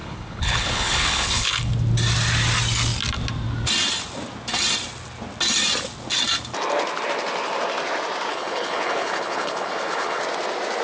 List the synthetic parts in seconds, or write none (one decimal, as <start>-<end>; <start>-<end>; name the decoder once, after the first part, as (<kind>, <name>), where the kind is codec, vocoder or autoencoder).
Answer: 0.0-1.7 (codec, HILCodec); 8.3-10.2